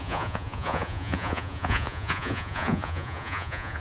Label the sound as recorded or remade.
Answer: remade